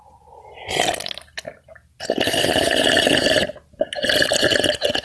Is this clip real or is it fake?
real